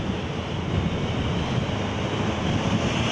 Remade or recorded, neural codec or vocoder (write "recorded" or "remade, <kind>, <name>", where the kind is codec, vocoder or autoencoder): recorded